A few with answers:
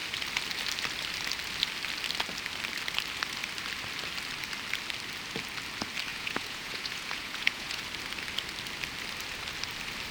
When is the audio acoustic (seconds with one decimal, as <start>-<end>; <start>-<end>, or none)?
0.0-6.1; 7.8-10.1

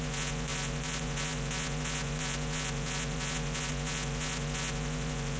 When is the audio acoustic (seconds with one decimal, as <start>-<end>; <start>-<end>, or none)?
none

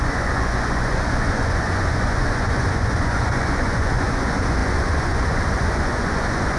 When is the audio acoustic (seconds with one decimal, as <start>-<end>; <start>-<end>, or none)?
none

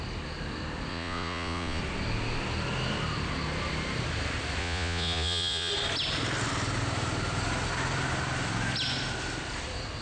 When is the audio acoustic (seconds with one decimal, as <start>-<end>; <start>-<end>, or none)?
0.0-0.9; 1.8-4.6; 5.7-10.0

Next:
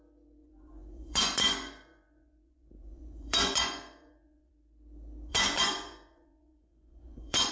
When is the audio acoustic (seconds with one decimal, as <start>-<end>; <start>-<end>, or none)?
0.0-0.4; 4.5-5.3